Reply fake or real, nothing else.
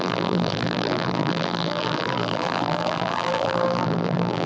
fake